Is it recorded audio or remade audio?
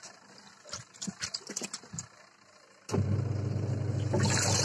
recorded